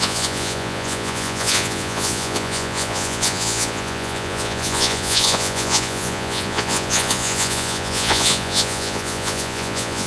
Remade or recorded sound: remade